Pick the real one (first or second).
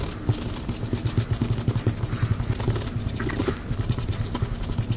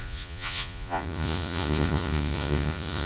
first